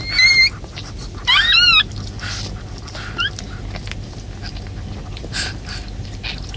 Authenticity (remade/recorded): recorded